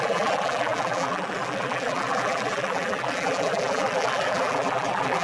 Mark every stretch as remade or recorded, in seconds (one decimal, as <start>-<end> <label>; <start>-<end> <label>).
0.0-5.2 remade